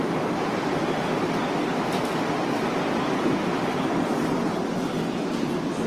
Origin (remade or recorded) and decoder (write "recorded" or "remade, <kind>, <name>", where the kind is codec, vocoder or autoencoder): recorded